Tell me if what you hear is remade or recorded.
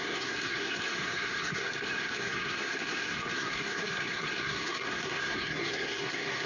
remade